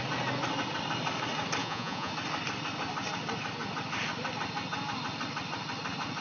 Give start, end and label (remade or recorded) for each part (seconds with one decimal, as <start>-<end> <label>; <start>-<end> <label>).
0.0-1.6 recorded; 1.6-2.1 remade; 2.1-6.2 recorded